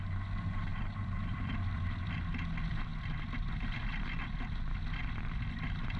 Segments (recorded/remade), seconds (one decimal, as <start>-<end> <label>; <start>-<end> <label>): 0.0-0.7 recorded; 0.7-2.2 remade; 2.2-6.0 recorded